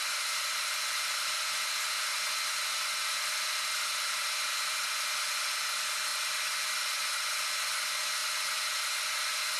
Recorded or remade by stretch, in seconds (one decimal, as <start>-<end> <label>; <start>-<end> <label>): 0.0-9.6 recorded